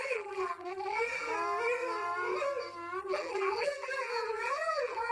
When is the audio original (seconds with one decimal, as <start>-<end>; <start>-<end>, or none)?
1.3-3.0